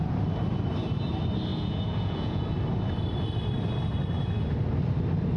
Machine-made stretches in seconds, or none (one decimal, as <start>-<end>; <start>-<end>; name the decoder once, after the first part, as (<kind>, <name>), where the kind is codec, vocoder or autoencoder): 1.5-2.4 (vocoder, Vocos)